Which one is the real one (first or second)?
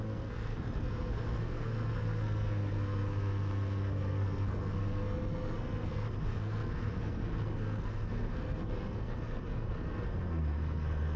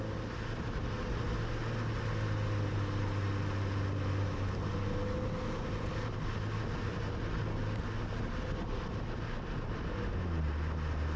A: second